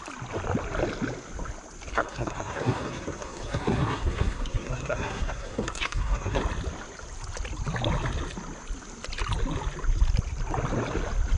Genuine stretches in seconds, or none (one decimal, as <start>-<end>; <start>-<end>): 0.0-1.9; 6.4-11.4